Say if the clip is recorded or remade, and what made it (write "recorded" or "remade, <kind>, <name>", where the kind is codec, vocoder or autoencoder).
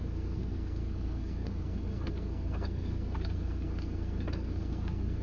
remade, codec, SNAC